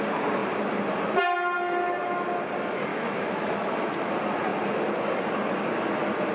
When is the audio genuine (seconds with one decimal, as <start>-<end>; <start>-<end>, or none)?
0.0-2.9; 4.1-6.3